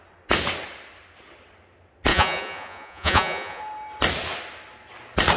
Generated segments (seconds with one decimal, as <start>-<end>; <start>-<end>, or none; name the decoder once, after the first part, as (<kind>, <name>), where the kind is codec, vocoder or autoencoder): 2.1-3.6 (vocoder, Vocos)